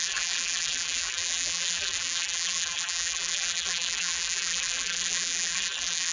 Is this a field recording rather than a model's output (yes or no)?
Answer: no